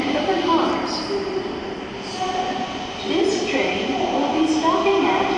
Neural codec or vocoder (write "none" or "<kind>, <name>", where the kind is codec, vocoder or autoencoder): none